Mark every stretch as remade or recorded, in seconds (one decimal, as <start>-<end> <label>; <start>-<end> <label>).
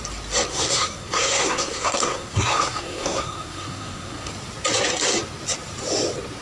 0.0-0.5 recorded; 0.5-4.3 remade; 4.3-6.4 recorded